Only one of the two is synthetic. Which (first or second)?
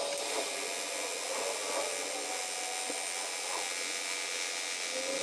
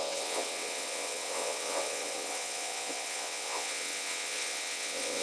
second